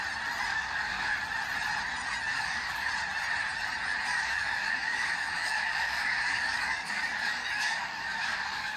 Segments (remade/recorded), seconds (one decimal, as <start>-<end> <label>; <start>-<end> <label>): 0.0-0.5 recorded; 0.5-1.1 remade; 1.1-2.3 recorded; 2.3-2.9 remade; 2.9-4.1 recorded; 4.1-8.8 remade